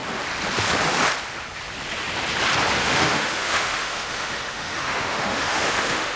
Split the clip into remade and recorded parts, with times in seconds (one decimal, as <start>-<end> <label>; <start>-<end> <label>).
0.0-2.8 recorded; 2.8-6.2 remade